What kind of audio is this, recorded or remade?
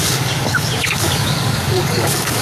remade